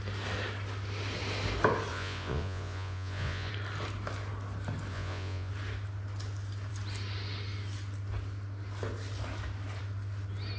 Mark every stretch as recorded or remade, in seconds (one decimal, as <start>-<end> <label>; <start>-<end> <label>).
0.0-1.9 recorded; 1.9-3.5 remade; 3.5-4.9 recorded; 4.9-5.5 remade; 5.5-10.6 recorded

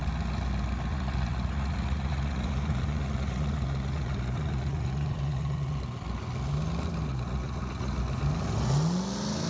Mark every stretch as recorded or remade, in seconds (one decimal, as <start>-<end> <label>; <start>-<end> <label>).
0.0-0.9 recorded; 0.9-5.7 remade; 5.7-7.1 recorded; 7.1-8.0 remade; 8.0-9.5 recorded

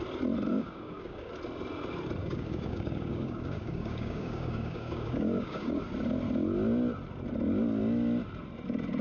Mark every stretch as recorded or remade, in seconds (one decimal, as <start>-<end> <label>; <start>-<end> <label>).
0.0-0.5 recorded; 0.5-1.3 remade; 1.3-2.2 recorded; 2.2-5.7 remade; 5.7-9.0 recorded

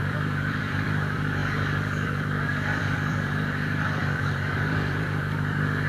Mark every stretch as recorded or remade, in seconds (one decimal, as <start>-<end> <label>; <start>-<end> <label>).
0.0-5.9 remade

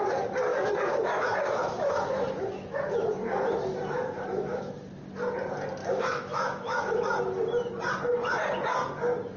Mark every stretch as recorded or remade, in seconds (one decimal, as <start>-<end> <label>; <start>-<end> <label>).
0.0-0.5 recorded; 0.5-4.7 remade; 4.7-5.8 recorded; 5.8-7.2 remade; 7.2-9.4 recorded

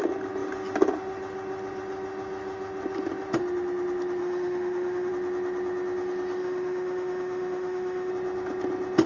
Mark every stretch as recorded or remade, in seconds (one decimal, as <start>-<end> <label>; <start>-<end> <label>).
0.0-4.2 recorded; 4.2-5.1 remade; 5.1-6.4 recorded; 6.4-8.1 remade; 8.1-9.1 recorded

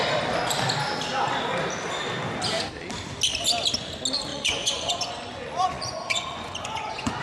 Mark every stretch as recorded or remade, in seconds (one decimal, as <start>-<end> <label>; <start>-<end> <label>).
0.0-4.3 recorded; 4.3-7.2 remade